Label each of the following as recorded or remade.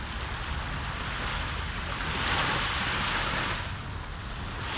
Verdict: recorded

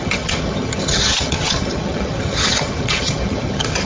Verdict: remade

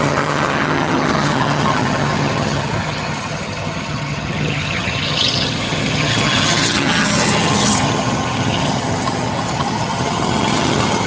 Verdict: remade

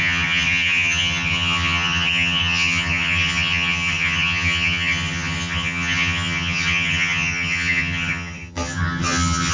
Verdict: remade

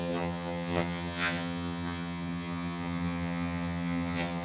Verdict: remade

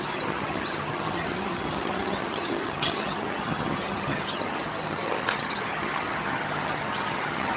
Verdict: remade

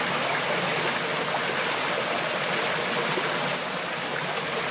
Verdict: recorded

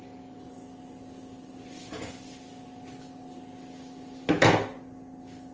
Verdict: recorded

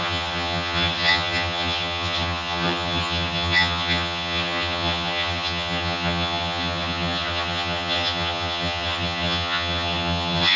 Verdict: remade